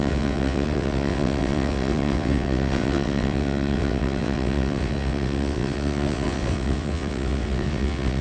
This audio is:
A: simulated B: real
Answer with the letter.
A